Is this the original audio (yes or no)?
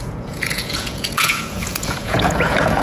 no